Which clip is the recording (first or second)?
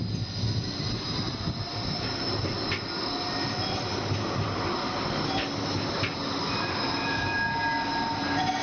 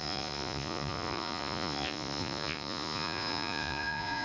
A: first